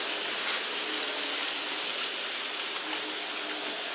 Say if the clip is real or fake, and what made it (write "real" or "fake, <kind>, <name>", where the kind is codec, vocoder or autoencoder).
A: real